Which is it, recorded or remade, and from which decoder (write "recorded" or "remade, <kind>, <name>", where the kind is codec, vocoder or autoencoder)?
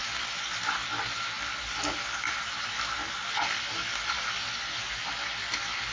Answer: recorded